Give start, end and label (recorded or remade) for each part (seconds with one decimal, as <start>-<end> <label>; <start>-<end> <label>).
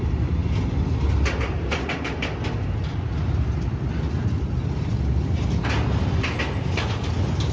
0.0-7.5 recorded